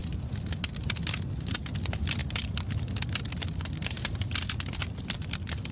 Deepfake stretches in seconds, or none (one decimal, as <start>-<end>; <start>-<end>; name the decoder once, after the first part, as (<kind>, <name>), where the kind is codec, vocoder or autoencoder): none